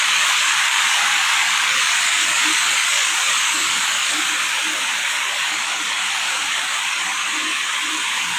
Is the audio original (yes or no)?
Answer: no